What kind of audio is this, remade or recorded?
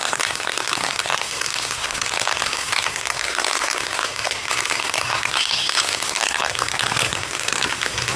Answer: remade